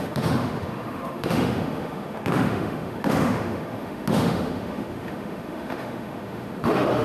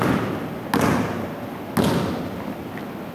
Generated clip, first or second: first